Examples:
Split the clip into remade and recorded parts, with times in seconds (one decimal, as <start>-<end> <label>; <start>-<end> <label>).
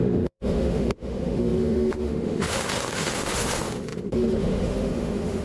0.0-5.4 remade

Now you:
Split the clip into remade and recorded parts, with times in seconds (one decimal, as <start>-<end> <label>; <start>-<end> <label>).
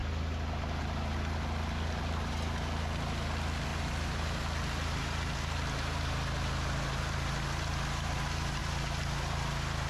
0.0-9.9 recorded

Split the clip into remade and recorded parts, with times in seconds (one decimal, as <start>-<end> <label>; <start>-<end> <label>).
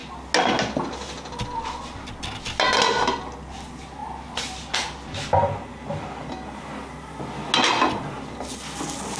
0.0-9.2 recorded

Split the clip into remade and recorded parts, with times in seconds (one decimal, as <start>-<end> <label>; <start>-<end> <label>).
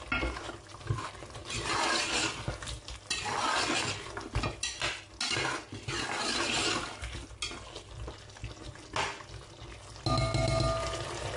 0.0-11.4 recorded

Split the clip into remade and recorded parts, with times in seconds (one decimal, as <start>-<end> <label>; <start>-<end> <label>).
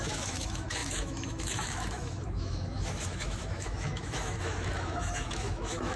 0.0-6.0 remade